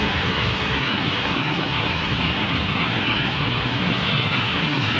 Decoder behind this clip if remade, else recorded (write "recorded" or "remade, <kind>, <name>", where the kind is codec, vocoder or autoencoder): remade, codec, SNAC